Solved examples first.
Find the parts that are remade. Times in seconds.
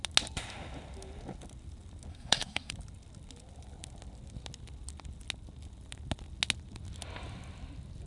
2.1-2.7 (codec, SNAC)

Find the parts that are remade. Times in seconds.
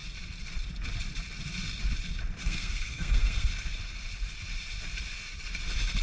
2.4-3.5 (codec, SNAC)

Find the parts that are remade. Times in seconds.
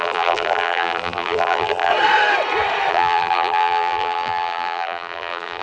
0.0-1.9 (vocoder, BigVGAN v2); 2.9-5.6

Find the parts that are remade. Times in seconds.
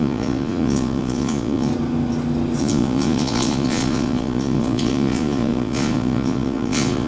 0.0-1.7 (vocoder, Vocos); 2.6-7.1